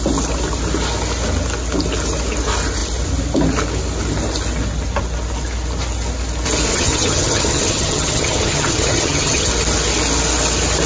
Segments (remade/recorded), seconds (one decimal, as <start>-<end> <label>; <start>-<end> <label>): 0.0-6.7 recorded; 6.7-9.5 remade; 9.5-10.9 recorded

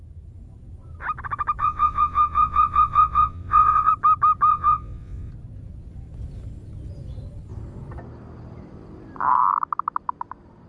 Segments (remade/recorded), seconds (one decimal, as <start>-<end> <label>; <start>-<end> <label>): 0.0-1.6 recorded; 1.6-3.9 remade; 3.9-4.5 recorded; 4.5-5.3 remade; 5.3-10.7 recorded

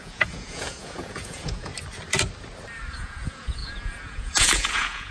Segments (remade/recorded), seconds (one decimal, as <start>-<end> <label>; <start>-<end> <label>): 0.0-1.7 remade; 1.7-2.9 recorded; 2.9-5.1 remade